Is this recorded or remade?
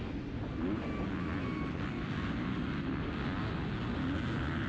recorded